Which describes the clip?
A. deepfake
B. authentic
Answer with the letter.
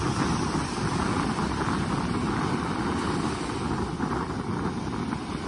B